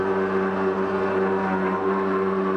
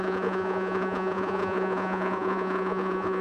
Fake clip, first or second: second